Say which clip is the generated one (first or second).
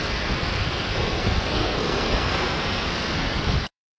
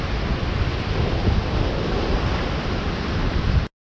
first